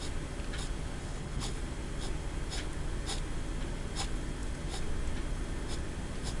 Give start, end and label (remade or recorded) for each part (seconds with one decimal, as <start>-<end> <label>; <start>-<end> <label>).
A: 0.0-1.0 recorded; 1.0-1.6 remade; 1.6-6.4 recorded